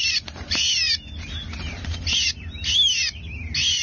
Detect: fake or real real